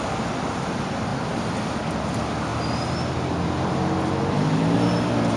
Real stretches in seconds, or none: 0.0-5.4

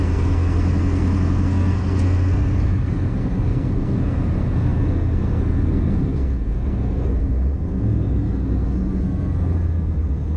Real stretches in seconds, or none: none

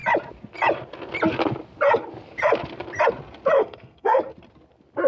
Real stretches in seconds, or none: 0.0-3.6; 4.2-5.1

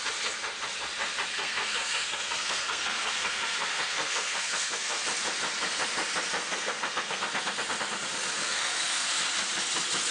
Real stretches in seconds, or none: 0.0-1.3; 5.0-6.4; 7.2-8.4; 9.1-10.1

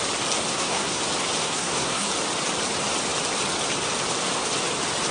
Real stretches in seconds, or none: 0.0-0.5; 1.0-1.4; 2.1-5.1